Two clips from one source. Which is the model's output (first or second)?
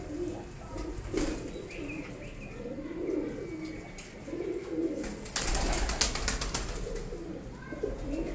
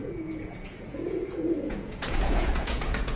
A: second